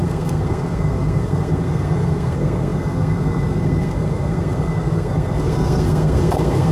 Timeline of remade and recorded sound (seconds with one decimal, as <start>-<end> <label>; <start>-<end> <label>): 0.0-6.7 remade